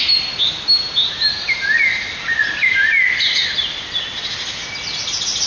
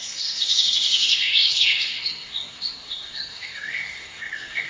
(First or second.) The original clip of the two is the first